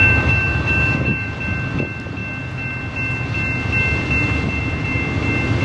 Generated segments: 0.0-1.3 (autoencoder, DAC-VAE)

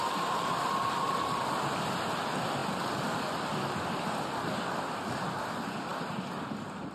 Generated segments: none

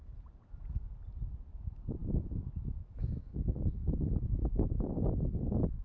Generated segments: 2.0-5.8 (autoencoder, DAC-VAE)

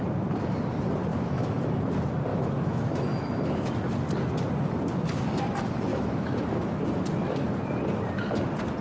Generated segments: 1.1-1.8 (autoencoder, DAC-VAE); 2.3-3.7; 5.9-6.8